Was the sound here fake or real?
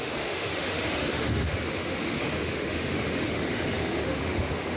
fake